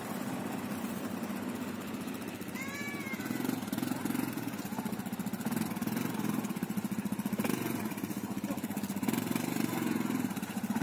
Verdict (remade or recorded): remade